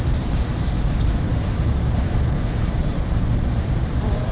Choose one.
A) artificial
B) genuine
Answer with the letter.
A